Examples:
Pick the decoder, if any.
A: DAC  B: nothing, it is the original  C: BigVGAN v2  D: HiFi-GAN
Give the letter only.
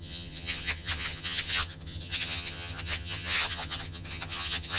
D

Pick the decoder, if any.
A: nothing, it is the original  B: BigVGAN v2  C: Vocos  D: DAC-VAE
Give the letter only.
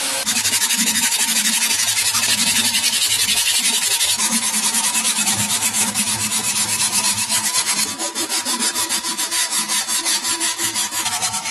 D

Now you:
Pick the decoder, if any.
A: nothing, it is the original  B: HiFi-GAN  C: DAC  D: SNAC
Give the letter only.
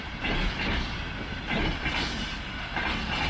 A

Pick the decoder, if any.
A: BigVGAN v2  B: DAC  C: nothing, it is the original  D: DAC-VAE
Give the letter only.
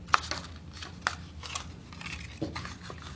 C